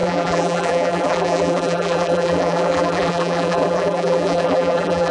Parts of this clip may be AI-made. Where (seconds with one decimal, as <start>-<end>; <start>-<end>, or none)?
0.0-5.1